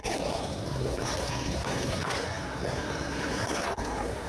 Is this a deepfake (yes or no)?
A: yes